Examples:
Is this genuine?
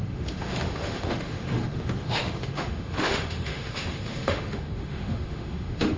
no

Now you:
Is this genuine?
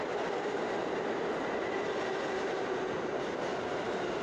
yes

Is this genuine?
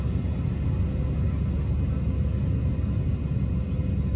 yes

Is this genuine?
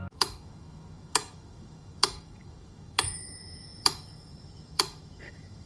no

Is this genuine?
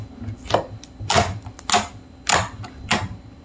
yes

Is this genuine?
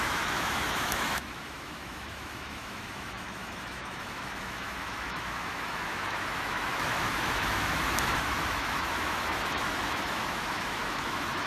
no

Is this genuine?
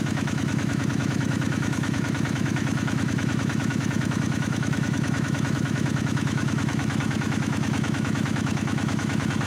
no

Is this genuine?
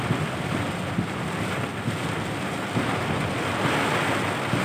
yes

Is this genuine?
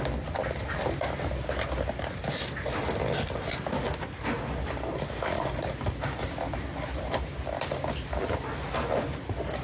yes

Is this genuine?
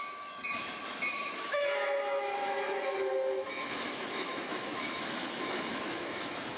no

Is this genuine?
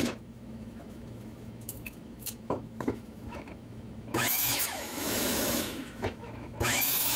no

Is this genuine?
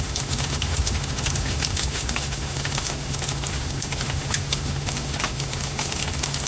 no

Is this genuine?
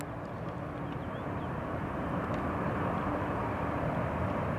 yes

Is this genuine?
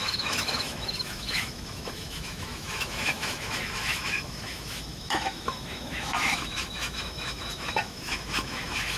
no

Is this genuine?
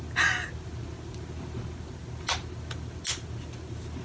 yes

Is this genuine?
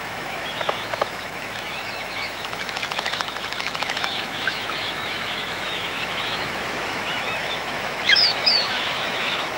no